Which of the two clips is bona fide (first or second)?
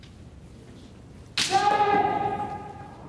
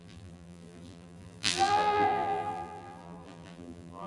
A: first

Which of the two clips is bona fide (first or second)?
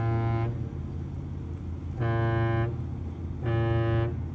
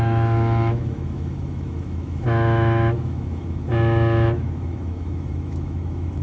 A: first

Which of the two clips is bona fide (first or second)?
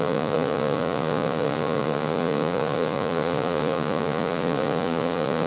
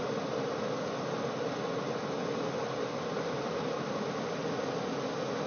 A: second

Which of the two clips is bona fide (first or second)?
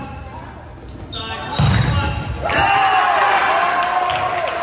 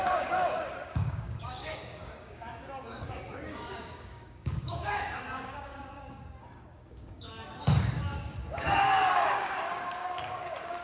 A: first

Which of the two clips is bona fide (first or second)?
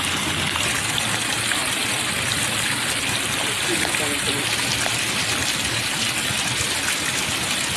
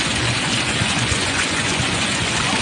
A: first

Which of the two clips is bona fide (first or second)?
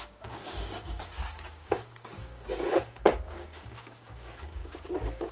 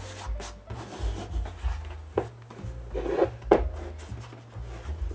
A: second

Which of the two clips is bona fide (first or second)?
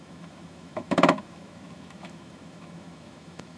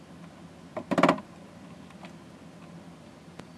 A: second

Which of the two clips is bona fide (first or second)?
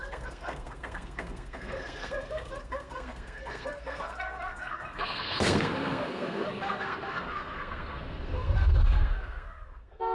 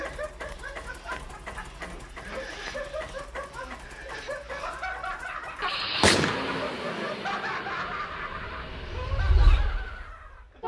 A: second